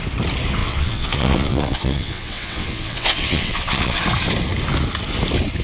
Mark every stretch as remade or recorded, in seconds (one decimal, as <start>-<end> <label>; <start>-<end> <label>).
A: 0.0-0.6 recorded; 0.6-4.0 remade; 4.0-5.6 recorded